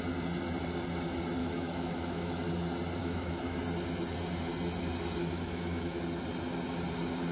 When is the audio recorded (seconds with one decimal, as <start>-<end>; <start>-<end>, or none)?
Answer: 0.0-1.4; 2.5-3.0; 3.6-5.2; 6.0-7.3